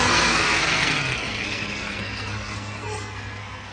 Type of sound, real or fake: fake